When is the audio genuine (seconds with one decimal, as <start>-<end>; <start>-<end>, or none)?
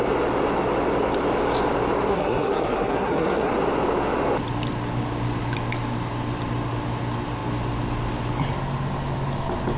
0.0-2.1; 3.5-9.8